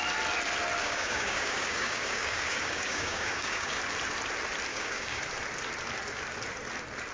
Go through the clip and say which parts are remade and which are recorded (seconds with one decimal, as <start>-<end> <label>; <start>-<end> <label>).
0.0-0.8 recorded; 0.8-3.8 remade; 3.8-4.7 recorded; 4.7-5.2 remade; 5.2-7.1 recorded